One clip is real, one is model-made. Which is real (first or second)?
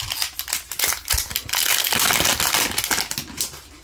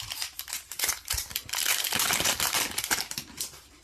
first